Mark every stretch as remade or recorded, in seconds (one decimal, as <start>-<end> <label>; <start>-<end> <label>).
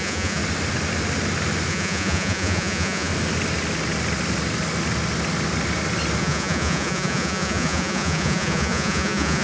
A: 0.0-0.4 remade; 0.4-1.7 recorded; 1.7-3.1 remade; 3.1-6.2 recorded; 6.2-9.4 remade